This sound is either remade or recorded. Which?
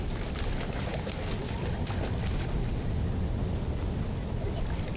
recorded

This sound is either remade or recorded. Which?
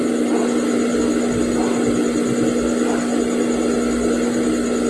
recorded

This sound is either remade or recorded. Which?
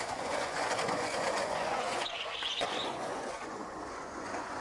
remade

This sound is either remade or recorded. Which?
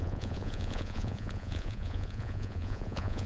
remade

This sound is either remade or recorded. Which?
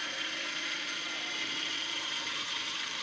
remade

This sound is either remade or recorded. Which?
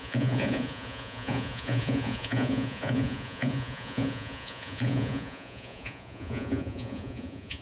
remade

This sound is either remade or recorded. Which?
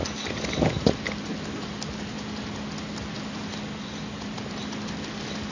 recorded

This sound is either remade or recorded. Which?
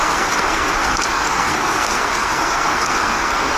remade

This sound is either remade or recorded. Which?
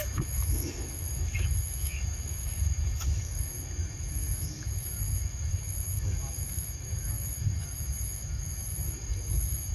remade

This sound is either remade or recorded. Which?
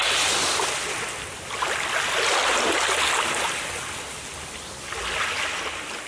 recorded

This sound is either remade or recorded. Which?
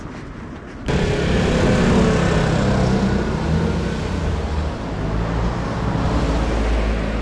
recorded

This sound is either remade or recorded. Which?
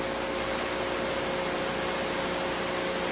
recorded